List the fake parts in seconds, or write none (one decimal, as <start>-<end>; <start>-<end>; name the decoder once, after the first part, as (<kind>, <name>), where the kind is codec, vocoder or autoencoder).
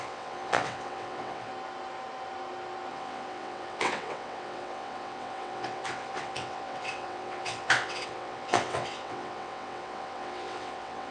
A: 0.0-1.5 (vocoder, WaveNeXt); 2.9-11.1